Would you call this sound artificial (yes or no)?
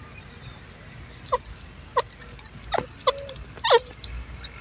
no